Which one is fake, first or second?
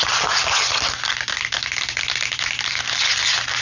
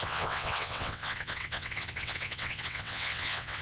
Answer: second